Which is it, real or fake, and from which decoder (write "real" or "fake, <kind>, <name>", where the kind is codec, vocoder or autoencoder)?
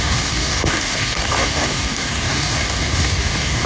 fake, codec, DAC